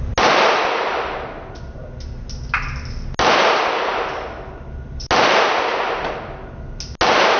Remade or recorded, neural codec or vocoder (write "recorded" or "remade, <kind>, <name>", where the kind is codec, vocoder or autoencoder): recorded